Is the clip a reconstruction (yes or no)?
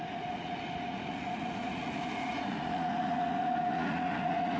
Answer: yes